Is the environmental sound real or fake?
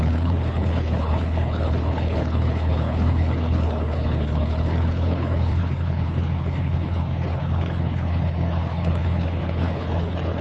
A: fake